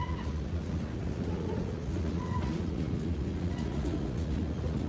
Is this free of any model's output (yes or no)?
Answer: no